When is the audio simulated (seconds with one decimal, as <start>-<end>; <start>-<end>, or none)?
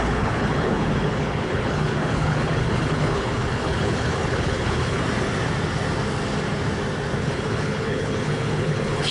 0.0-5.0; 7.2-9.1